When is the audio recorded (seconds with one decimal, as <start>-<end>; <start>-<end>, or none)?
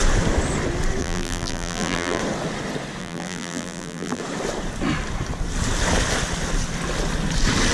0.0-1.0; 2.2-3.0; 4.2-7.7